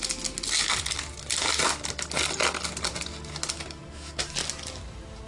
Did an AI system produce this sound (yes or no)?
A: no